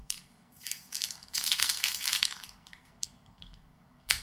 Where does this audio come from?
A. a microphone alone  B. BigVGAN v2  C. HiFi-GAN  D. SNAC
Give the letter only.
D